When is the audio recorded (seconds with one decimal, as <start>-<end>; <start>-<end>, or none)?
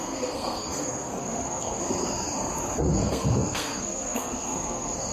1.8-2.8